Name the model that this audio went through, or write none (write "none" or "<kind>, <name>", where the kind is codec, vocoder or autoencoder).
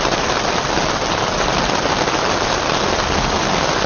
none